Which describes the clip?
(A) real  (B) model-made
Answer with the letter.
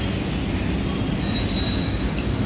A